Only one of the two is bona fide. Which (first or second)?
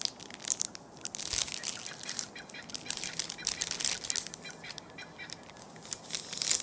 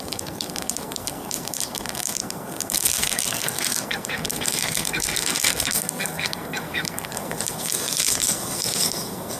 first